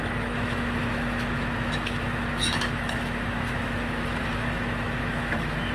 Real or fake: fake